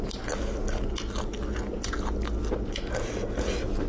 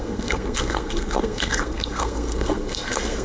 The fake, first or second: second